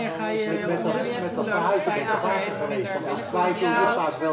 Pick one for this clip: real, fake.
real